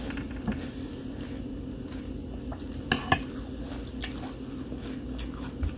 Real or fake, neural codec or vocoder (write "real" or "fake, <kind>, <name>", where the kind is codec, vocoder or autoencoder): real